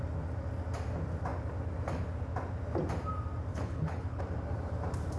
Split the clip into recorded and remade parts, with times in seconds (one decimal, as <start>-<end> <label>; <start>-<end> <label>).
0.0-3.5 recorded; 3.5-4.2 remade; 4.2-5.2 recorded